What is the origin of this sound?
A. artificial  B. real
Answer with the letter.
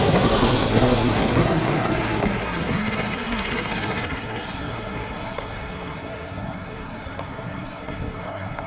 A